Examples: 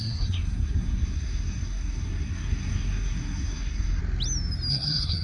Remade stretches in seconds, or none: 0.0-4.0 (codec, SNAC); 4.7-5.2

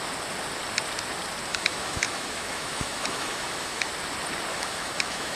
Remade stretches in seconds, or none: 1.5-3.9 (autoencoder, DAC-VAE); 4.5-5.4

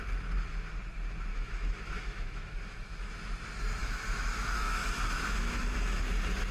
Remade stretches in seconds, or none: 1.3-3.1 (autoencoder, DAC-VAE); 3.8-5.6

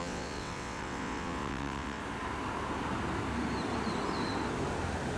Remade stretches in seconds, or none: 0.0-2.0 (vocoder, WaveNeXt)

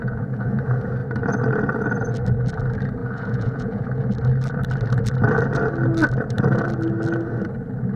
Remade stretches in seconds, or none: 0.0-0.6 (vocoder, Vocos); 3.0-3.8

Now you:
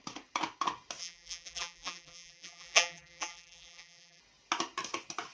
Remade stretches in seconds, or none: 1.0-4.2 (vocoder, BigVGAN v2)

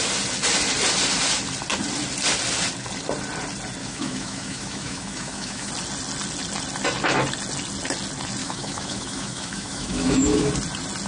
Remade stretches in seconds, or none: 3.8-5.7 (autoencoder, DAC-VAE); 8.4-10.5